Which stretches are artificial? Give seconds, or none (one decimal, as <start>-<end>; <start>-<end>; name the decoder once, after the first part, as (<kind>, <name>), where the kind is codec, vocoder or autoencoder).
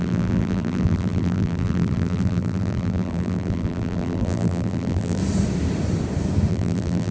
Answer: 0.0-5.2 (vocoder, BigVGAN v2); 6.5-7.1